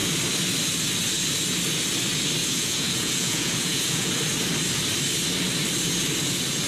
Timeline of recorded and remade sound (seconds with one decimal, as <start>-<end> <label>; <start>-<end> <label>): 0.0-2.4 recorded; 2.4-4.1 remade; 4.1-6.7 recorded

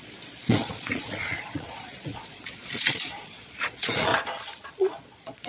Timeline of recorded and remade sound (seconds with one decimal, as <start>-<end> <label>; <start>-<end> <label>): 0.0-4.1 remade; 4.1-4.7 recorded; 4.7-5.5 remade

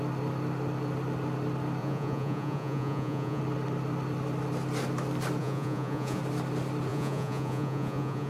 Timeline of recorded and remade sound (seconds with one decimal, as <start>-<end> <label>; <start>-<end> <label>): 0.0-1.8 recorded; 1.8-3.4 remade; 3.4-5.4 recorded; 5.4-6.2 remade; 6.2-6.9 recorded; 6.9-8.3 remade

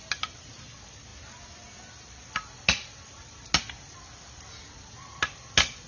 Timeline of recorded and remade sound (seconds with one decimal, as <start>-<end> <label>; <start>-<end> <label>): 0.0-5.9 recorded

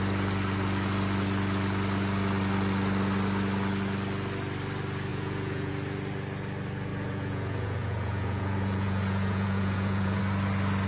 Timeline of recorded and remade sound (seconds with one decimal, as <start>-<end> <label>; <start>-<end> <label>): 0.0-5.1 recorded; 5.1-5.7 remade; 5.7-6.9 recorded; 6.9-10.2 remade; 10.2-10.9 recorded

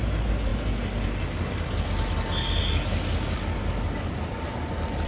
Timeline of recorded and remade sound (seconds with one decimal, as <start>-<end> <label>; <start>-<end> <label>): 0.0-5.1 recorded